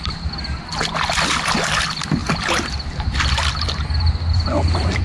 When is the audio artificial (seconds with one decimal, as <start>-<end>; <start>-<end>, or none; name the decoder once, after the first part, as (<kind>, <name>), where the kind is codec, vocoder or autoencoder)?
2.2-3.1 (vocoder, BigVGAN v2)